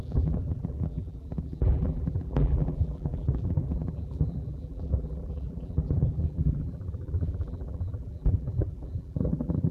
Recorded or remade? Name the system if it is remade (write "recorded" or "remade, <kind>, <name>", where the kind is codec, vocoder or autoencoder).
remade, vocoder, BigVGAN v2